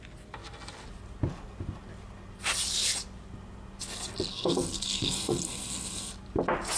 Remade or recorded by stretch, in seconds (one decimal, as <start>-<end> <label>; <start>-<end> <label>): 0.0-4.3 recorded; 4.3-6.1 remade; 6.1-6.8 recorded